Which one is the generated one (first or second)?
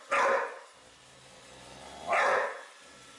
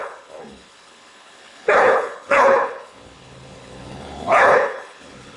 second